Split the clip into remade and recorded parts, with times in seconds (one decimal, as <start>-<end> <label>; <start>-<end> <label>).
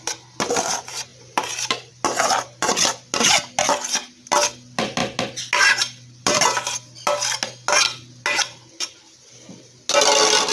0.0-1.1 recorded; 1.1-1.9 remade; 1.9-10.5 recorded